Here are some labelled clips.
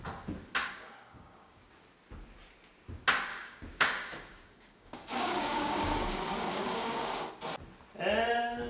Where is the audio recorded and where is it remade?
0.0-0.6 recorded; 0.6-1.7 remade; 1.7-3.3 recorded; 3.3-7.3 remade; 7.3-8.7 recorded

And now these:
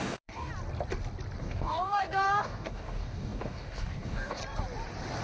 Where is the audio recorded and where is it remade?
0.0-0.5 remade; 0.5-1.4 recorded; 1.4-4.4 remade; 4.4-5.2 recorded

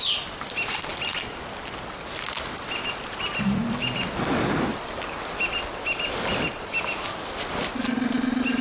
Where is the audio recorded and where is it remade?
0.0-8.6 recorded

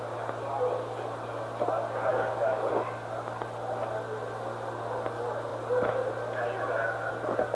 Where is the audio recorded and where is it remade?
0.0-2.1 recorded; 2.1-2.7 remade; 2.7-7.5 recorded

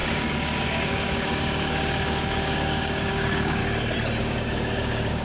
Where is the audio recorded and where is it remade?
0.0-3.6 remade; 3.6-4.2 recorded; 4.2-5.2 remade